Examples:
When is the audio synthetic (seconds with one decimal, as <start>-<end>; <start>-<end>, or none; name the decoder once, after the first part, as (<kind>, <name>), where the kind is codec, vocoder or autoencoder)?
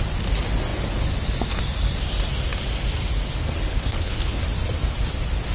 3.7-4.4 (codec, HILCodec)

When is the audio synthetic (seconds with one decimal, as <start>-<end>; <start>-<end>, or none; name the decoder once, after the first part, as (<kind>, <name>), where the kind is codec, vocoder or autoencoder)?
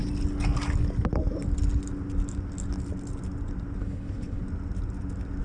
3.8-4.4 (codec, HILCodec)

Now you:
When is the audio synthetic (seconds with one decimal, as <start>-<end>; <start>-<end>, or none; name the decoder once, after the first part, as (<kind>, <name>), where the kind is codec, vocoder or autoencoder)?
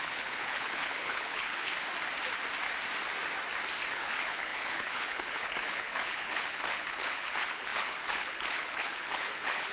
0.0-1.7 (codec, HILCodec); 3.9-9.7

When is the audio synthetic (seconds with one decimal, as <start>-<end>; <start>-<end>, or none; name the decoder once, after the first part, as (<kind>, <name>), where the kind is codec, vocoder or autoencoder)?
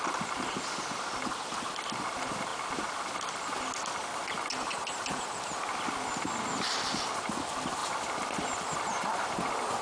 none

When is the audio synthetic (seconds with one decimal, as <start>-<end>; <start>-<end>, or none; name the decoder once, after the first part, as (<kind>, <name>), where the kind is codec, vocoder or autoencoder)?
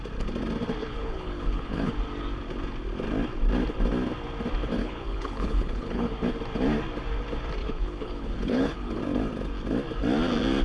0.8-1.9 (codec, HILCodec); 4.8-6.1; 7.6-9.0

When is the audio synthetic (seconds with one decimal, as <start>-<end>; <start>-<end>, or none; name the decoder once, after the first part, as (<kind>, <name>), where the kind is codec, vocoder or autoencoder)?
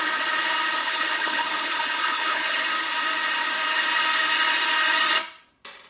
0.8-2.6 (codec, HILCodec)